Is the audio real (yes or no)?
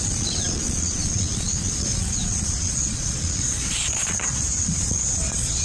no